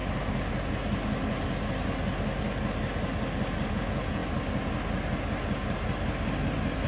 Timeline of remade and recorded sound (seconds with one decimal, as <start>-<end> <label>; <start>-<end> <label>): 0.0-3.7 recorded; 3.7-4.2 remade; 4.2-6.9 recorded